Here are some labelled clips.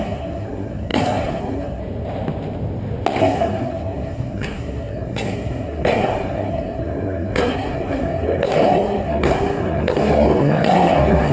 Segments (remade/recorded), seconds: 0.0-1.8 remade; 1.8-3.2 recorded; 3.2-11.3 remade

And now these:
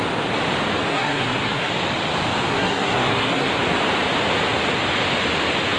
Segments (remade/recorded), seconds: 0.0-0.9 recorded; 0.9-1.7 remade; 1.7-2.5 recorded; 2.5-3.5 remade; 3.5-5.8 recorded

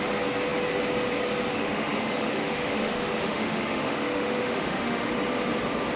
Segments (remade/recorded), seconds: 0.0-1.5 recorded; 1.5-5.1 remade; 5.1-6.0 recorded

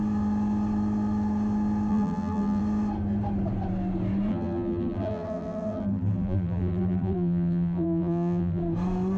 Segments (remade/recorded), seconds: 0.0-1.9 recorded; 1.9-2.6 remade; 2.6-4.3 recorded; 4.3-8.6 remade; 8.6-9.2 recorded

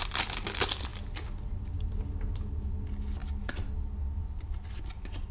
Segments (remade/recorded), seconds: 0.0-5.3 recorded